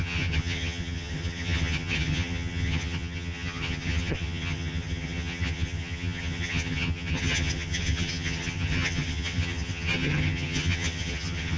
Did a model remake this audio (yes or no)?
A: yes